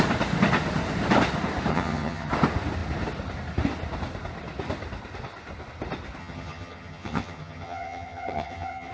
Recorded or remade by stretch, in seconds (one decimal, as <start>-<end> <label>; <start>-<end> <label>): 0.0-1.7 recorded; 1.7-2.3 remade; 2.3-6.2 recorded; 6.2-8.9 remade